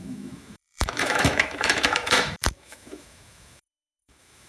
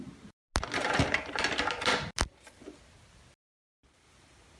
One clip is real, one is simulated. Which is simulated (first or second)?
first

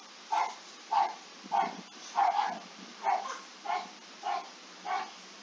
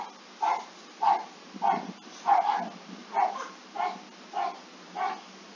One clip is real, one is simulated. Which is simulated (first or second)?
first